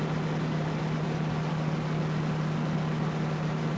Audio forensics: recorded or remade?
recorded